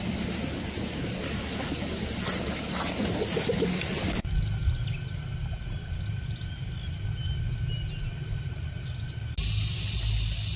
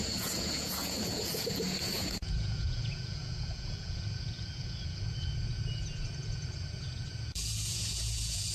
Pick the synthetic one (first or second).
second